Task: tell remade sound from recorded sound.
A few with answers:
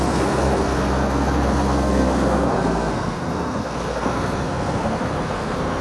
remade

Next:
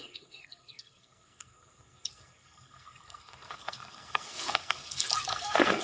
remade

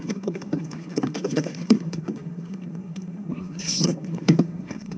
remade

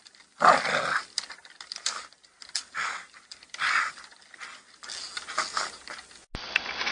recorded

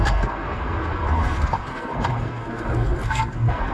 remade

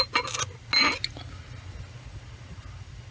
recorded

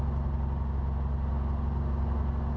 recorded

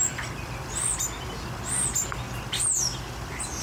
recorded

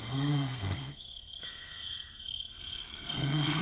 remade